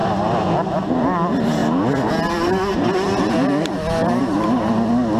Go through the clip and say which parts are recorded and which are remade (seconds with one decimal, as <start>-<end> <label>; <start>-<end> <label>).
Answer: 0.0-0.8 remade; 0.8-4.2 recorded; 4.2-4.7 remade; 4.7-5.2 recorded